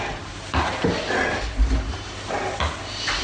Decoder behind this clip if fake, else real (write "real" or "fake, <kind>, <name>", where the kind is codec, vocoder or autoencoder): real